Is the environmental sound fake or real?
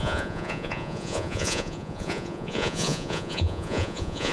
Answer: fake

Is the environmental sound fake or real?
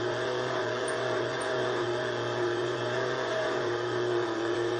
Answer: fake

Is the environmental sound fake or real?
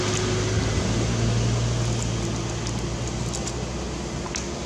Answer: real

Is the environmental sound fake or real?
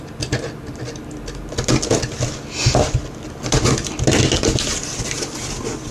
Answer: real